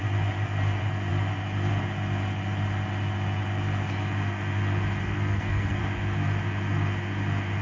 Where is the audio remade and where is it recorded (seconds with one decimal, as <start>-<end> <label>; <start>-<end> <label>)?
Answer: 0.0-5.0 recorded; 5.0-5.8 remade; 5.8-7.6 recorded